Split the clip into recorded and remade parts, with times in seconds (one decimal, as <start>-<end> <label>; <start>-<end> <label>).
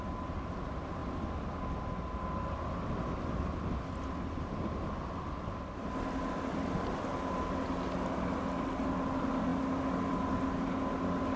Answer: 0.0-11.4 recorded